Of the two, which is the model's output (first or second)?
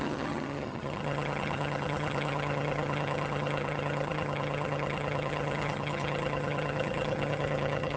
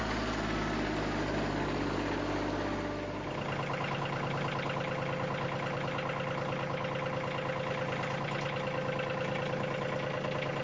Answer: first